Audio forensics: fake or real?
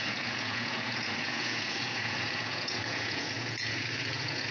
fake